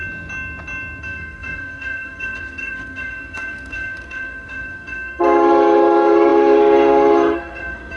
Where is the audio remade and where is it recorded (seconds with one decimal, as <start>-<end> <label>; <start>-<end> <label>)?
0.0-1.0 recorded; 1.0-8.0 remade